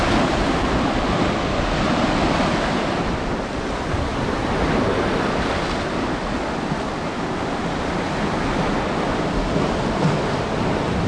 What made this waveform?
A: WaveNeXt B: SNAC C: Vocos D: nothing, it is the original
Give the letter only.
D